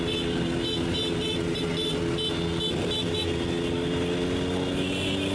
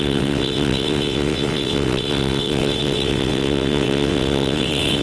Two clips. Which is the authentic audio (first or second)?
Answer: first